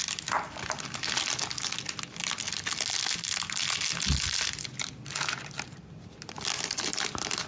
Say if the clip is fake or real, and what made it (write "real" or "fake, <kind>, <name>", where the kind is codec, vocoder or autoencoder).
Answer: real